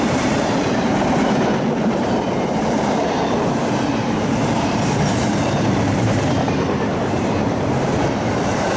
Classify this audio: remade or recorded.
remade